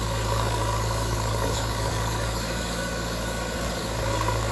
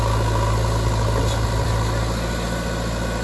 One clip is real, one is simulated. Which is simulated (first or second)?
first